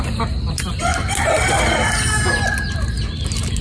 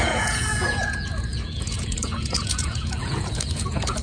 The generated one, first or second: second